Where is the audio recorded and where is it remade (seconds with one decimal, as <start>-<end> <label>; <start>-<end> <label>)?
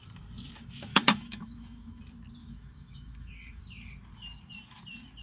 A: 0.0-0.9 recorded; 0.9-2.0 remade; 2.0-2.4 recorded; 2.4-3.6 remade; 3.6-5.2 recorded